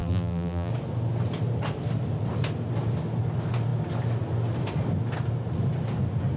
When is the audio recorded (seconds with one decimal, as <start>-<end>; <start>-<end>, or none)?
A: 0.7-6.4